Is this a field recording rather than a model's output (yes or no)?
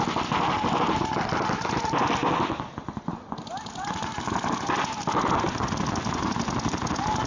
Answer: yes